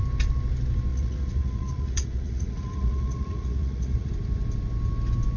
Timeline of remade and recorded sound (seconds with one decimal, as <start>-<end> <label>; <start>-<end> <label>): 0.0-0.9 recorded; 0.9-4.1 remade; 4.1-5.4 recorded